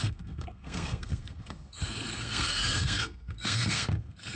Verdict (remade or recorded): remade